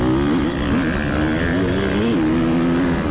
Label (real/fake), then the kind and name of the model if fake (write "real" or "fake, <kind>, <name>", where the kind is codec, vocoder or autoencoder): real